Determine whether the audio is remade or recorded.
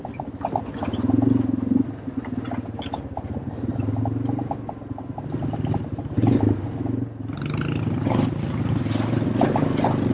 recorded